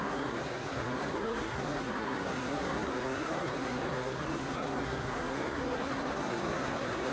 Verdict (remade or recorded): remade